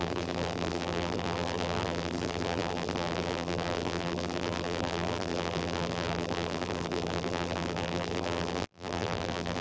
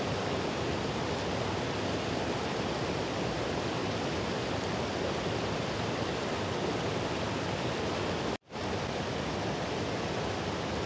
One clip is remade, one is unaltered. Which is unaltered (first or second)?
second